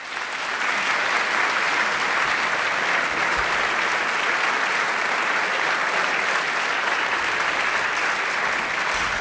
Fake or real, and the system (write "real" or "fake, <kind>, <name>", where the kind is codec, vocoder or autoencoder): real